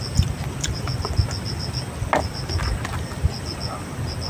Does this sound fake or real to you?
real